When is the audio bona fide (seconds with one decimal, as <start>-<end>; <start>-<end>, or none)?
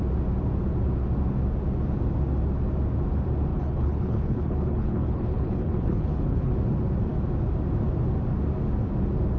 0.0-3.5; 6.5-9.4